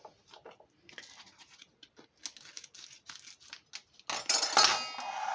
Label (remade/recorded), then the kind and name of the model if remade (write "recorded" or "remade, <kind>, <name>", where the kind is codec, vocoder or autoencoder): recorded